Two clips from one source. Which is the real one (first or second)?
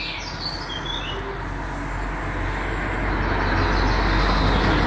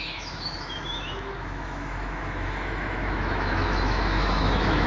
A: first